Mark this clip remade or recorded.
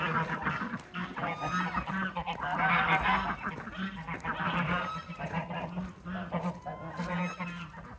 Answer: recorded